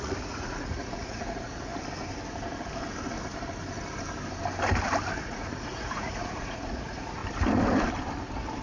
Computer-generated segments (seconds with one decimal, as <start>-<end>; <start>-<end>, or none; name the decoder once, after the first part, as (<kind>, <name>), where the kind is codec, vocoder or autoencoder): 0.0-1.7 (vocoder, Vocos); 5.2-7.2